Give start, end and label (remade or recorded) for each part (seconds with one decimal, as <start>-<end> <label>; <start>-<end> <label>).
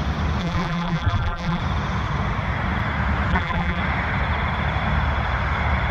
0.0-0.4 recorded; 0.4-1.6 remade; 1.6-3.3 recorded; 3.3-3.8 remade; 3.8-5.9 recorded